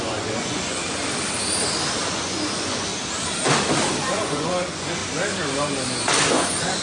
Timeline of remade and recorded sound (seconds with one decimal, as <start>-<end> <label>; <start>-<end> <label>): 0.0-0.8 remade; 0.8-2.2 recorded; 2.2-2.9 remade; 2.9-4.1 recorded; 4.1-5.0 remade; 5.0-6.3 recorded; 6.3-6.8 remade